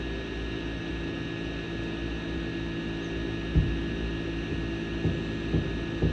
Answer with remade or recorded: recorded